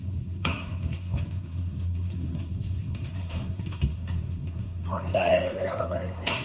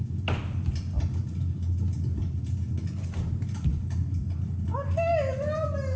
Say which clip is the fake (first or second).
first